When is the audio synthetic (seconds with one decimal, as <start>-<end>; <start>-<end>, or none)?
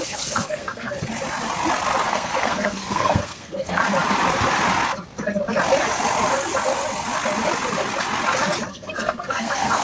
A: 0.0-1.0; 2.1-3.8; 8.7-9.8